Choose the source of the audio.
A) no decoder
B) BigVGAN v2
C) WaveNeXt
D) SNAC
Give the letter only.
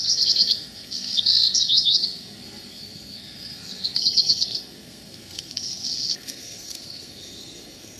D